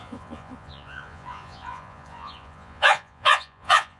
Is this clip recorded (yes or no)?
no